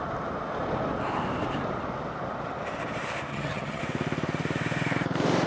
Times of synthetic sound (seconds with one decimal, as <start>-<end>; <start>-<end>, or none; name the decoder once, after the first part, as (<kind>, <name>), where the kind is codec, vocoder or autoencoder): 3.3-3.8 (vocoder, HiFi-GAN)